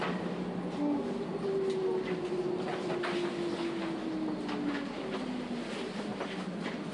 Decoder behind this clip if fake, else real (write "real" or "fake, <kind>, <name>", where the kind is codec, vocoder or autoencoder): real